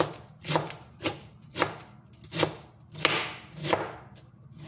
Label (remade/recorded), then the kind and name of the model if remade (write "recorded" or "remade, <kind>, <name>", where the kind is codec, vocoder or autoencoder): recorded